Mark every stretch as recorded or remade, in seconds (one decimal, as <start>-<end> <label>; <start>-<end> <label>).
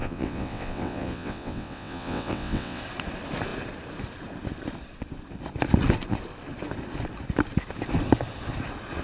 0.0-2.8 remade; 2.8-9.0 recorded